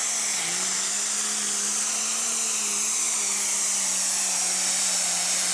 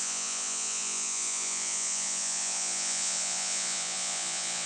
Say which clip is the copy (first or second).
second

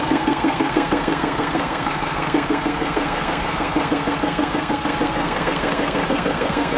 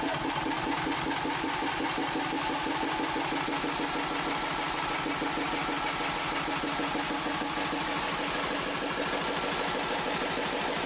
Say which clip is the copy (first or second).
first